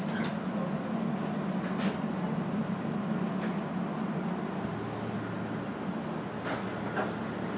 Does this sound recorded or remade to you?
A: recorded